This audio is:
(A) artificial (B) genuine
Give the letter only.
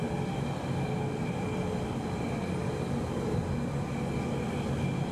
B